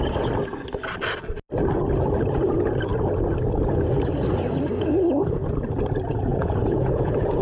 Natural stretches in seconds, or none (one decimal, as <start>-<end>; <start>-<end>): 0.0-6.3